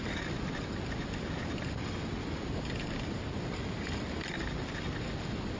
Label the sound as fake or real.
real